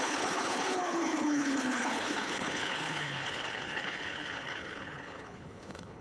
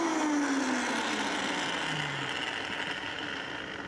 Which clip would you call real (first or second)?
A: second